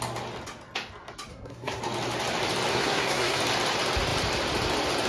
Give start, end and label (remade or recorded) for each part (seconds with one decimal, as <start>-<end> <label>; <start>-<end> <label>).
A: 0.0-1.3 recorded; 1.3-1.8 remade; 1.8-2.7 recorded; 2.7-3.4 remade; 3.4-5.1 recorded